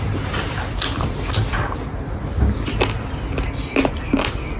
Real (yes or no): yes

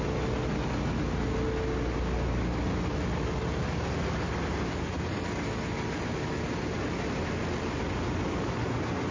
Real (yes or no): yes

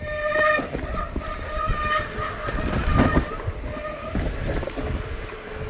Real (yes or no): yes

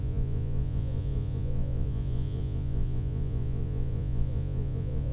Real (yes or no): no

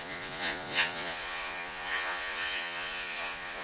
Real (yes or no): no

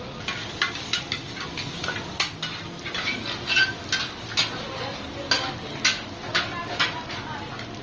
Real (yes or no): yes